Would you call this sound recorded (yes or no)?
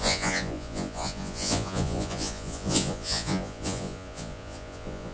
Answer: no